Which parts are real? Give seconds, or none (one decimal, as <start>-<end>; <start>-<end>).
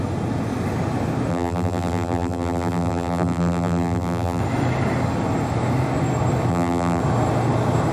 0.0-1.3; 4.4-6.5; 7.0-7.9